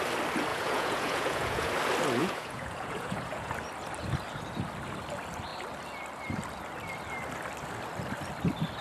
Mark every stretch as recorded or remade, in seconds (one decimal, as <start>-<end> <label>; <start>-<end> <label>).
0.0-0.5 recorded; 0.5-1.7 remade; 1.7-2.2 recorded; 2.2-3.5 remade; 3.5-8.8 recorded